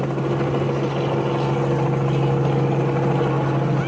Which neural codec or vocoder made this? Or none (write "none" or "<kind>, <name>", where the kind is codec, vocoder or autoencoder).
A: none